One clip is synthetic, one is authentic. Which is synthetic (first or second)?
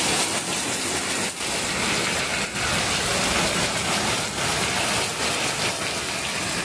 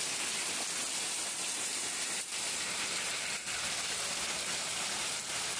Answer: second